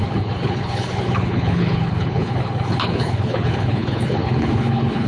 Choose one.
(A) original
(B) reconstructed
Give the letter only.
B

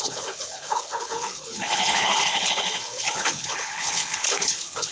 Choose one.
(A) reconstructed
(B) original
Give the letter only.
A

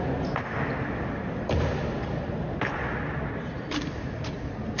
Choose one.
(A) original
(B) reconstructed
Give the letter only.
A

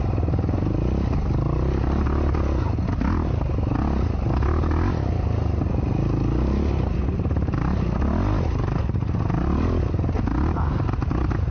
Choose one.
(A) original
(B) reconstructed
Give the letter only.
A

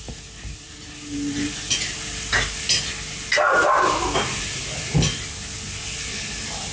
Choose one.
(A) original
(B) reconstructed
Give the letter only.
A